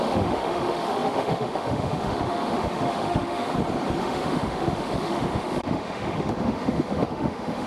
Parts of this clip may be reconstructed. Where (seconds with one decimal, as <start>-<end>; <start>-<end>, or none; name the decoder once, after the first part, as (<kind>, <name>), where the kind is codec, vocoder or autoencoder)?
0.0-3.5 (autoencoder, DAC-VAE); 4.0-7.7